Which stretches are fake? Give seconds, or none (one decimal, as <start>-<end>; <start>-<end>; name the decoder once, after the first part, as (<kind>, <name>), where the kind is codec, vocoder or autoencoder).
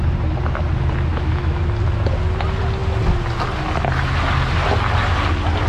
1.1-1.6 (autoencoder, DAC-VAE)